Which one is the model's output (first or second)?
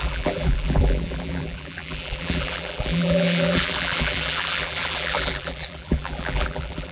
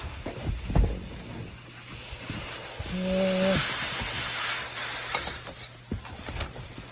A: first